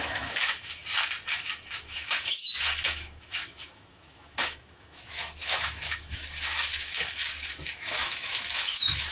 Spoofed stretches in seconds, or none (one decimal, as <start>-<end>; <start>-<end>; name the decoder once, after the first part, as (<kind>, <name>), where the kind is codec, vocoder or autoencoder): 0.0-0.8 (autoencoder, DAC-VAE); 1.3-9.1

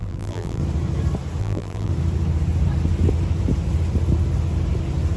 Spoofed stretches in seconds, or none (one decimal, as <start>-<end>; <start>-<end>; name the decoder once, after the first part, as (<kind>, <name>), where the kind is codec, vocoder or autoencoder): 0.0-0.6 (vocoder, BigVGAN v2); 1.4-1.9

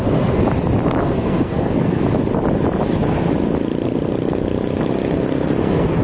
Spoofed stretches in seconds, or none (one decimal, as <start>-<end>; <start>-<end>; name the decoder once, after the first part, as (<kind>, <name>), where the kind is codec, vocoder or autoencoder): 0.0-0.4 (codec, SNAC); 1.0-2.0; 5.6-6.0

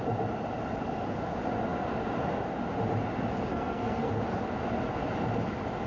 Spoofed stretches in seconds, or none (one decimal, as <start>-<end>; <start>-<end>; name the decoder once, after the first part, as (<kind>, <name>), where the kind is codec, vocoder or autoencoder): 3.5-4.1 (codec, SNAC)